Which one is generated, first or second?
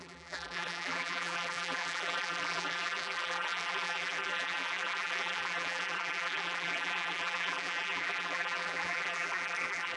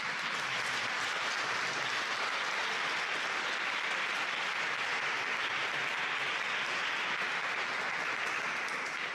first